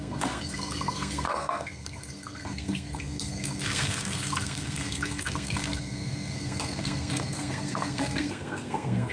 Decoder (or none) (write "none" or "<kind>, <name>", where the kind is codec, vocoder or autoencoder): codec, SNAC